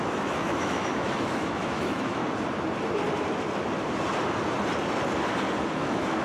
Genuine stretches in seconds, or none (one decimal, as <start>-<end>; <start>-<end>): 2.2-5.7